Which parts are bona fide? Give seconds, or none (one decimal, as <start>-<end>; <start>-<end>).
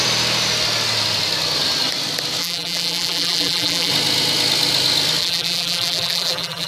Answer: 0.0-2.4; 3.9-5.2